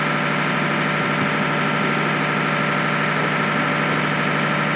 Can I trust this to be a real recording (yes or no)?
yes